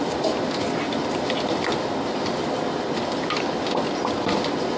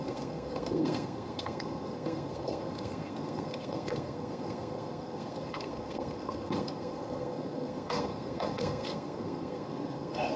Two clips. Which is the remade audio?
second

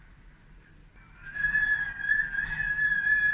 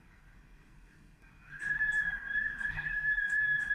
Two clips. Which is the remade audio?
second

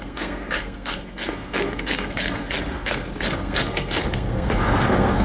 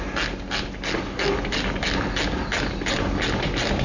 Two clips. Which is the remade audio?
first